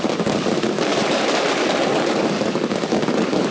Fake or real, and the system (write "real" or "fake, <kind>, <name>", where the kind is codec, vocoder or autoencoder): fake, codec, DAC